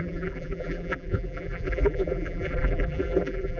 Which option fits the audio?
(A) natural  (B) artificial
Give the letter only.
B